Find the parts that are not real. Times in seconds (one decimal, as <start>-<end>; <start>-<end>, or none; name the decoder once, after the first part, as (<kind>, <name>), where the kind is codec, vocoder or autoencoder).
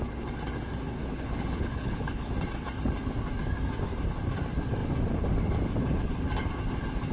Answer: 1.0-2.3 (codec, HILCodec)